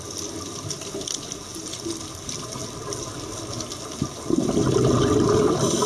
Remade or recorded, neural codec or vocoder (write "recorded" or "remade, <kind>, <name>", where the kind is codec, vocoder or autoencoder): recorded